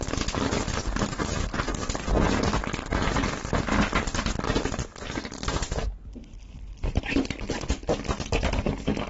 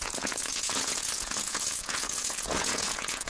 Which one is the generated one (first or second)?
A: second